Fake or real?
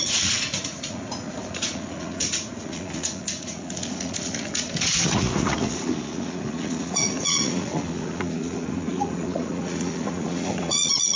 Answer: fake